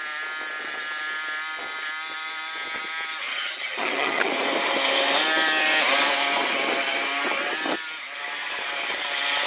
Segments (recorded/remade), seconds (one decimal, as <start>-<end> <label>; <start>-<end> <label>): 0.0-3.3 recorded; 3.3-4.3 remade; 4.3-9.5 recorded